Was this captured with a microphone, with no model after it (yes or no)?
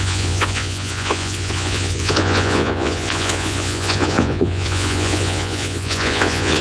no